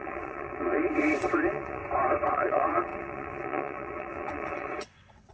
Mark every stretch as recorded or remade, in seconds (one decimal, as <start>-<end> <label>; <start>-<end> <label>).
0.0-1.8 remade; 1.8-2.3 recorded; 2.3-5.3 remade